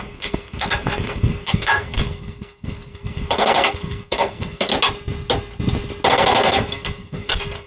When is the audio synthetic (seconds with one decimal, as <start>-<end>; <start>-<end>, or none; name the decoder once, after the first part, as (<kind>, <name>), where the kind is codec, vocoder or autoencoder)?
0.0-4.7 (codec, SNAC); 6.1-7.7